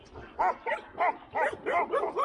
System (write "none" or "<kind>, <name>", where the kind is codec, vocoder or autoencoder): none